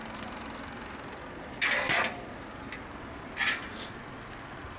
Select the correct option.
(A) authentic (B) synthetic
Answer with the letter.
A